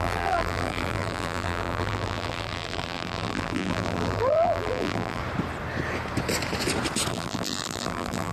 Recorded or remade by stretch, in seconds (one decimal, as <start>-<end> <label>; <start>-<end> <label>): 0.0-5.2 remade; 5.2-7.1 recorded; 7.1-8.3 remade